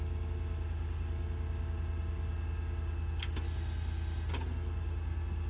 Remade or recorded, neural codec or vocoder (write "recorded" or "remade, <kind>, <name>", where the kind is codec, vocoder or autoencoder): recorded